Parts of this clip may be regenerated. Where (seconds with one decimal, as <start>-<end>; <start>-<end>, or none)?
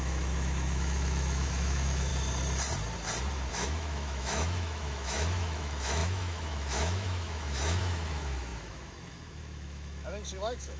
0.0-2.1; 3.5-10.8